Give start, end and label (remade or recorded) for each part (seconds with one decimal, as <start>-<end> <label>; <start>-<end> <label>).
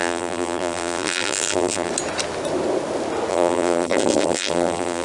0.0-1.9 remade; 1.9-3.3 recorded; 3.3-5.0 remade